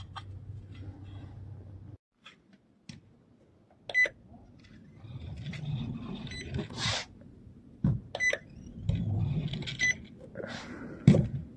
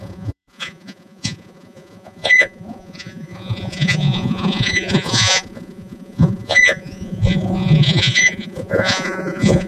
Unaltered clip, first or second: first